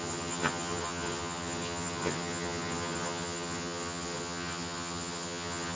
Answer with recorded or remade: remade